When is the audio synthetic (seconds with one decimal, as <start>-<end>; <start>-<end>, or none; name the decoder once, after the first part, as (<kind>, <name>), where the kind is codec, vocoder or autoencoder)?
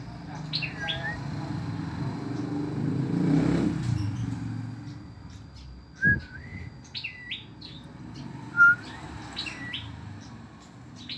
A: none